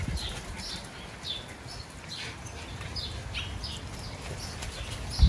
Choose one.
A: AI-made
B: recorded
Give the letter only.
B